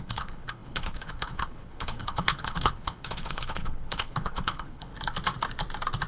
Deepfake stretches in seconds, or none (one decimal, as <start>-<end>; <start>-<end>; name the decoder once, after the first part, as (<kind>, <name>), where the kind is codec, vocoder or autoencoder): 0.0-4.9 (codec, HILCodec)